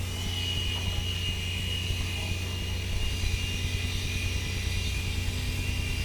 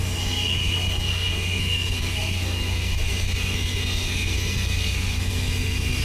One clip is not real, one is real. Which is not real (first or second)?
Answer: second